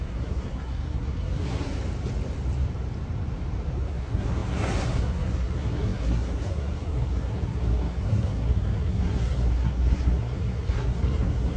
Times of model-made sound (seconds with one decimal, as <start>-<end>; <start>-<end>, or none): 0.0-1.8; 3.9-11.6